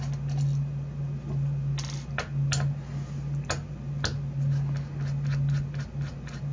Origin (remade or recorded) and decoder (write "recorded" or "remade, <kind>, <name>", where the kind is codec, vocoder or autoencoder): recorded